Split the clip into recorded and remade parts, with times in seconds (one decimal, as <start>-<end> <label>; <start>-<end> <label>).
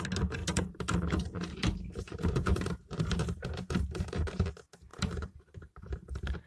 0.0-0.4 recorded; 0.4-4.3 remade; 4.3-4.9 recorded; 4.9-5.9 remade; 5.9-6.5 recorded